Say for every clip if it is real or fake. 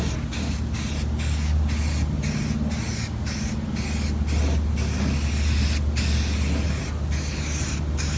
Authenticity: real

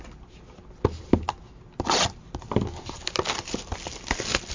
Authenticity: real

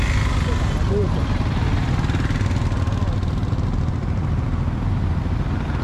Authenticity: real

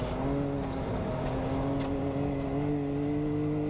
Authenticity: real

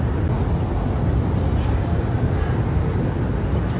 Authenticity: real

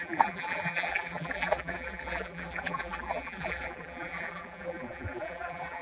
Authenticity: fake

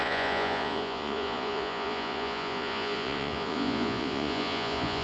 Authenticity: fake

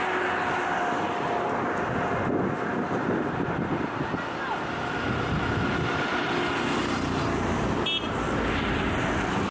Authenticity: real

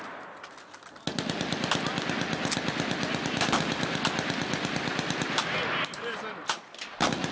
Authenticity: real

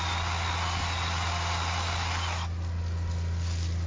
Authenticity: real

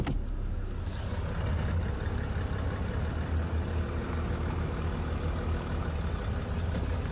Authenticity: real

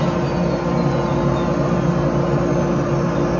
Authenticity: real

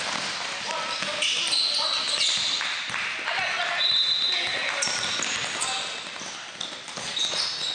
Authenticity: real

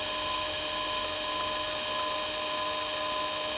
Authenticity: real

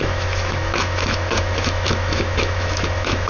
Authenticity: fake